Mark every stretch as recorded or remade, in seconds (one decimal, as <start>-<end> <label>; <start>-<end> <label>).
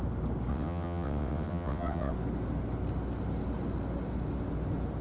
0.0-0.5 recorded; 0.5-2.1 remade; 2.1-5.0 recorded